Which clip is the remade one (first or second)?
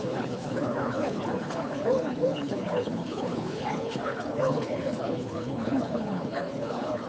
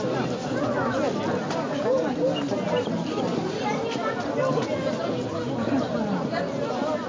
first